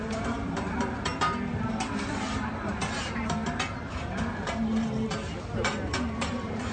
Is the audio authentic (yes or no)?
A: no